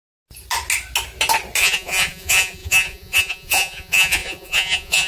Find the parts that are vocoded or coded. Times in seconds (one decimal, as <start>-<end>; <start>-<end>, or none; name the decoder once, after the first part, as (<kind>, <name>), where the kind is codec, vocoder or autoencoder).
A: 1.6-5.1 (vocoder, Vocos)